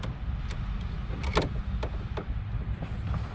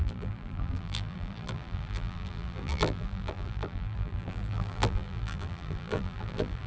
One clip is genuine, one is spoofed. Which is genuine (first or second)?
first